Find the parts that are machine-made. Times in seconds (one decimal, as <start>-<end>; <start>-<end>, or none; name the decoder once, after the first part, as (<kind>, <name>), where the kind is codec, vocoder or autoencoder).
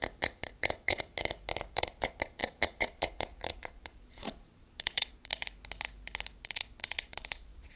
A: 0.0-1.1 (vocoder, Vocos); 1.7-5.3; 6.4-7.8